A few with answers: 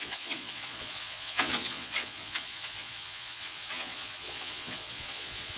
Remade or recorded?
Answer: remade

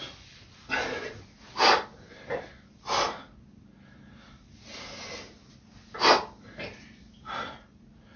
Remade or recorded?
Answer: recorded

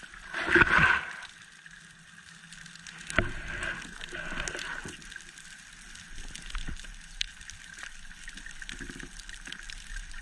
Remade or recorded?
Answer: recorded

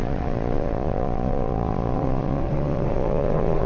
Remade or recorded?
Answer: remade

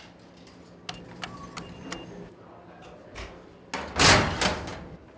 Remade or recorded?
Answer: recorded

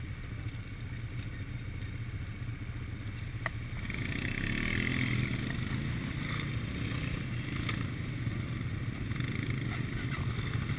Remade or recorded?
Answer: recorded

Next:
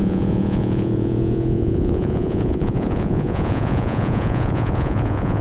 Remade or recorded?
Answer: remade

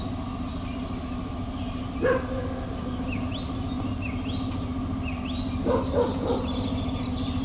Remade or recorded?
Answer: recorded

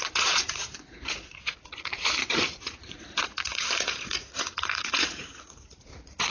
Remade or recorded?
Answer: remade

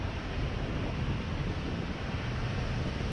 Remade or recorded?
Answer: recorded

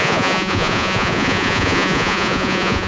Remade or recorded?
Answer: remade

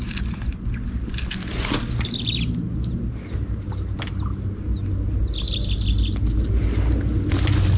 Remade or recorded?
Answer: recorded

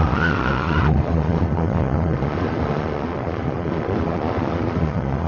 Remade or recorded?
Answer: remade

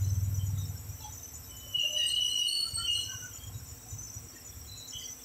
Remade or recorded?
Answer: recorded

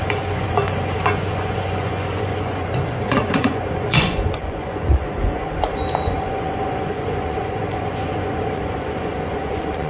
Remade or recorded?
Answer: remade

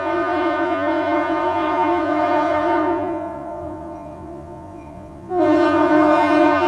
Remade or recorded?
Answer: remade